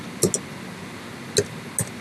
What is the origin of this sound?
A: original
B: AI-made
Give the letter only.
A